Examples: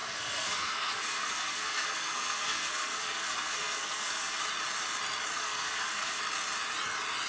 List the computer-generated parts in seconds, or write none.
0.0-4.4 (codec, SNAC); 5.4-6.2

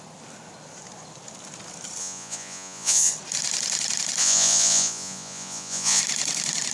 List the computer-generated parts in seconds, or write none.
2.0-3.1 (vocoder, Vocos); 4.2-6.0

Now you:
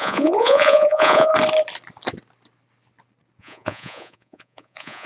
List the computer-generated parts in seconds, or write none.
0.0-1.3 (vocoder, Vocos); 3.4-5.1

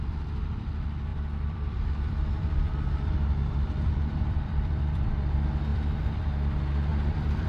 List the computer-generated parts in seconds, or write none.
1.1-5.1 (vocoder, BigVGAN v2); 5.7-6.3; 6.9-7.5